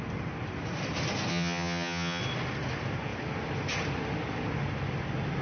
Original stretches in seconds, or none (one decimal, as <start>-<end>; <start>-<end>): 0.0-1.3; 2.2-5.4